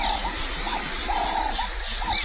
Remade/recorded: recorded